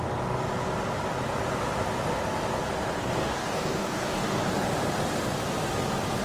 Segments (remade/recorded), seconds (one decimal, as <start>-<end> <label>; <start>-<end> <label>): 0.0-3.0 recorded; 3.0-4.4 remade; 4.4-6.2 recorded